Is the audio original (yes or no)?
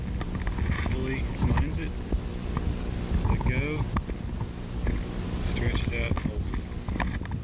yes